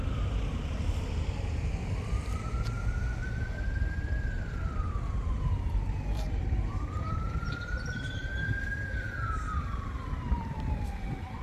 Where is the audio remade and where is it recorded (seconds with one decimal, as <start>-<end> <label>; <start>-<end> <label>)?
0.0-11.4 remade